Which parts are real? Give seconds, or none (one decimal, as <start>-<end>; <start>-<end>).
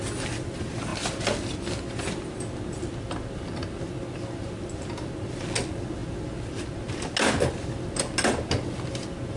0.0-9.4